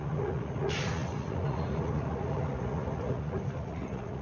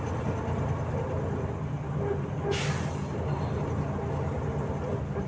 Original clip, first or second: second